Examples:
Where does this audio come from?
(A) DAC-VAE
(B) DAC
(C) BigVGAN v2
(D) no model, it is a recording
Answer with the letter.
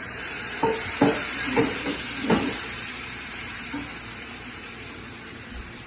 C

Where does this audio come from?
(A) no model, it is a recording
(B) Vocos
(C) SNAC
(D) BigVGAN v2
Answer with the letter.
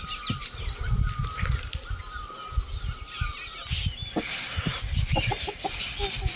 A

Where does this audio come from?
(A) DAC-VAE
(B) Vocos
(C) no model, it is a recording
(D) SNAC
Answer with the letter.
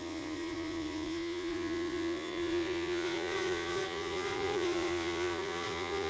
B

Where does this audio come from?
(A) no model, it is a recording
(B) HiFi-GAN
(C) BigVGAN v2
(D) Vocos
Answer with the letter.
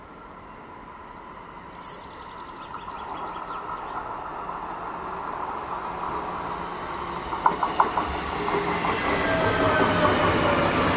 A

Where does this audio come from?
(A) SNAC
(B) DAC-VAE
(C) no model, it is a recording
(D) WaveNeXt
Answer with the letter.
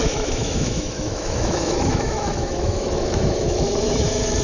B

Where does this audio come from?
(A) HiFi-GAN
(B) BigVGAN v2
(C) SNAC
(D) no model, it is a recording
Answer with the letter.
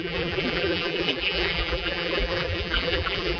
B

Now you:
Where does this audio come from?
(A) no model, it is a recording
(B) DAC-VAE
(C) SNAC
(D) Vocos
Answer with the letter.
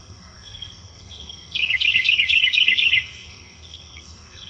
C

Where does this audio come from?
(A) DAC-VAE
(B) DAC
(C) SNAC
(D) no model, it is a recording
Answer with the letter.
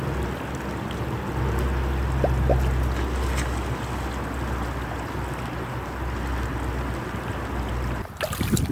D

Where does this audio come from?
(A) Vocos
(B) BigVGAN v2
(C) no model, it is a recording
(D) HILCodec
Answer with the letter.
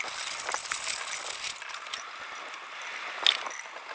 C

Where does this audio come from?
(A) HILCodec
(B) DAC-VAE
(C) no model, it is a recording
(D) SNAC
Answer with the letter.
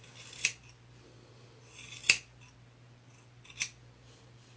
C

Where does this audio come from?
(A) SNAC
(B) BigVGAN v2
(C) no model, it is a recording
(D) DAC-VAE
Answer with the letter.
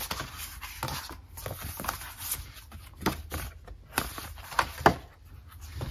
C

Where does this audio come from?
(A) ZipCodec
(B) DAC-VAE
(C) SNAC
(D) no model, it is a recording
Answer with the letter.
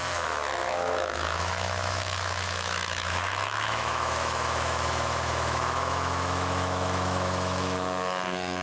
B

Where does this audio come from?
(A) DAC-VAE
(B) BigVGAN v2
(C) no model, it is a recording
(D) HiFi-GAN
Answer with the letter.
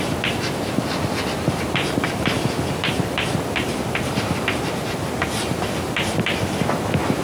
B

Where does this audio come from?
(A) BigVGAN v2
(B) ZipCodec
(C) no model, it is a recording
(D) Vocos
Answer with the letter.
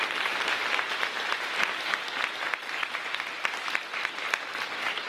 C